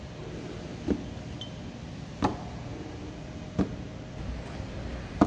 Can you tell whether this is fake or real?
real